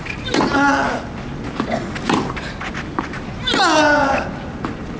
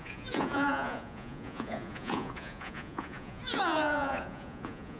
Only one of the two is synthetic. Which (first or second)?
second